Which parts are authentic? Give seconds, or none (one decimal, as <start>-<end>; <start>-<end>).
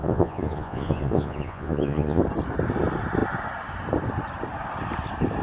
2.2-5.4